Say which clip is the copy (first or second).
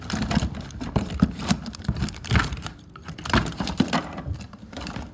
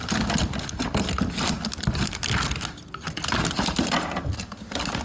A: first